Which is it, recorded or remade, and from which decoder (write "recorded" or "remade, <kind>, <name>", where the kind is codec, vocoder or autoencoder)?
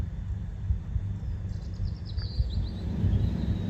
recorded